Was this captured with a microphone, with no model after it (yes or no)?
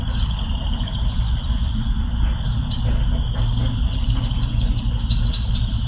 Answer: yes